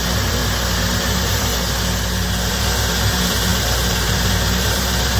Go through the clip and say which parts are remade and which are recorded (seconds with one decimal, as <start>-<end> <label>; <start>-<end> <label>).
0.0-0.4 remade; 0.4-1.0 recorded; 1.0-1.5 remade; 1.5-2.5 recorded; 2.5-5.2 remade